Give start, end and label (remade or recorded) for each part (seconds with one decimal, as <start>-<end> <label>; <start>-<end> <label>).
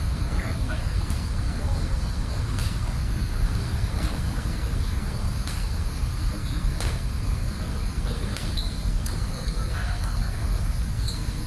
0.0-11.5 remade